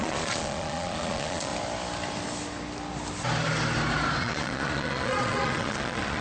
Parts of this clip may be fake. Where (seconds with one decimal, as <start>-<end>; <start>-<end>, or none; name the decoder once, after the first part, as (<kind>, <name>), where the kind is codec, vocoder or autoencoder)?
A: 0.0-1.5 (vocoder, Vocos); 4.2-6.2